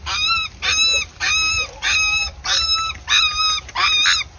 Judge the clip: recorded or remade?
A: recorded